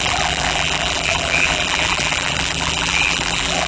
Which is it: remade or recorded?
remade